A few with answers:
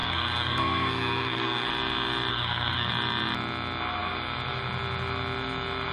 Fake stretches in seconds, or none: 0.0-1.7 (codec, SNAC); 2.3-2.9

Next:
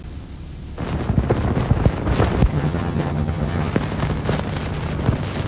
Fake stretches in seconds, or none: 2.5-3.7 (vocoder, HiFi-GAN)

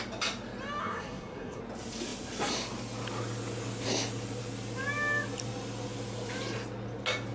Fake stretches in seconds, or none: 0.8-1.6 (codec, SNAC)

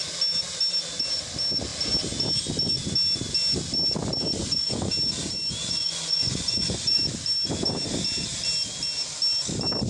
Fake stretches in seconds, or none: 4.4-4.9 (vocoder, Vocos); 5.6-7.0